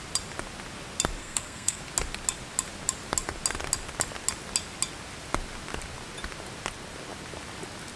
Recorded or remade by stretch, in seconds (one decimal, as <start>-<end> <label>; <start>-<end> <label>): 0.0-1.2 recorded; 1.2-1.8 remade; 1.8-8.0 recorded